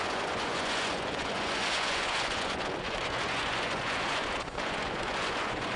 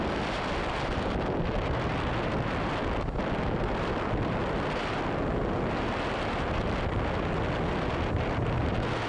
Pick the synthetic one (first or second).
first